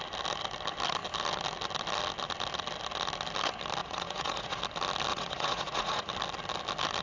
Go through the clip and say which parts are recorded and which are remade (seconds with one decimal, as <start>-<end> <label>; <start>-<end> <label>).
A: 0.0-3.8 recorded; 3.8-4.6 remade; 4.6-5.1 recorded; 5.1-6.1 remade; 6.1-7.0 recorded